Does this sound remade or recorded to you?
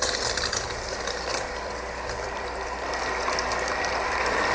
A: remade